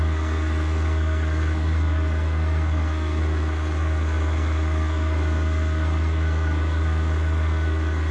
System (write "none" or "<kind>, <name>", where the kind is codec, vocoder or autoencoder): codec, SNAC